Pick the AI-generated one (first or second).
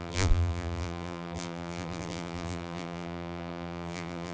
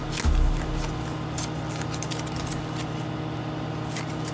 first